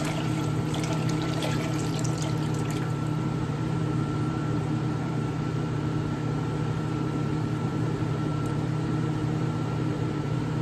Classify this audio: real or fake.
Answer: fake